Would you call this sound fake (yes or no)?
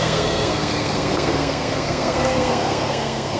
yes